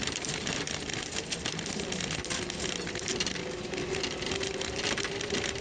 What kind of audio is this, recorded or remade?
recorded